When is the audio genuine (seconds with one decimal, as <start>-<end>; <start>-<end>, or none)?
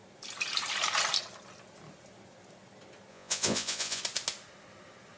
0.0-3.1; 4.0-5.2